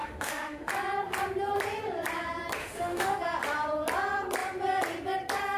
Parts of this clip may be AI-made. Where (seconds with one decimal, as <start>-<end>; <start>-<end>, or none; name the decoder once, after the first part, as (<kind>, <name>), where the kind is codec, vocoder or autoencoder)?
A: 0.0-0.7 (autoencoder, DAC-VAE); 2.6-3.2